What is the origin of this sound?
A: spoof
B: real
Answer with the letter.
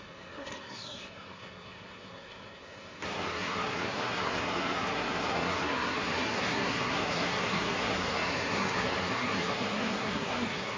A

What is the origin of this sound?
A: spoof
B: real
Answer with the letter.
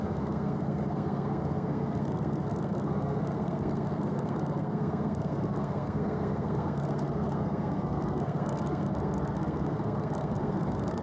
A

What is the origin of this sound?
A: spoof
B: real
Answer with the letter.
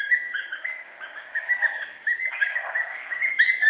A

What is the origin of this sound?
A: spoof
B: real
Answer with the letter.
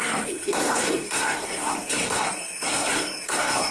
A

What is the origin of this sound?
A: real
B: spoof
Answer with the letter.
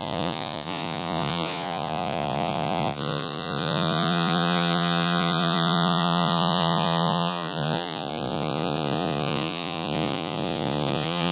B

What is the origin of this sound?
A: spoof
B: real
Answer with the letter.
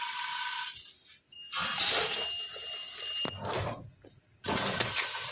B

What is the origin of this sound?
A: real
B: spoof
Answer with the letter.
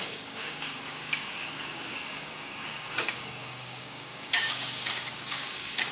B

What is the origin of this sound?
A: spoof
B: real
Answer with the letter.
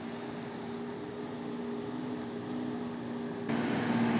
B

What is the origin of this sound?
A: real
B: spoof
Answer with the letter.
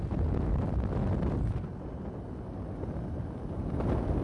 A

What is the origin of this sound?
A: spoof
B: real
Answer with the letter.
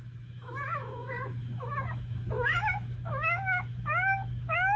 A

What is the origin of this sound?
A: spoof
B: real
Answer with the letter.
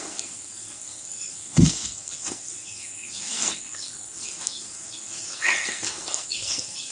A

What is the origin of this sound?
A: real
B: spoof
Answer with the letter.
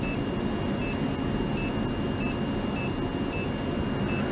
A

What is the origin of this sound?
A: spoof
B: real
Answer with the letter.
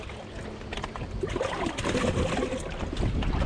B